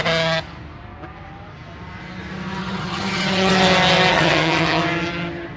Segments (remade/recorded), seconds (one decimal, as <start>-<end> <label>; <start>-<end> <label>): 0.0-2.6 recorded; 2.6-3.5 remade; 3.5-4.1 recorded; 4.1-4.8 remade; 4.8-5.6 recorded